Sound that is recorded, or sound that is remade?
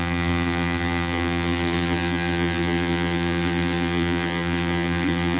remade